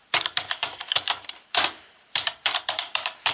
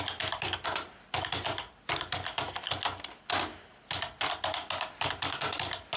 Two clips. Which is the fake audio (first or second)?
first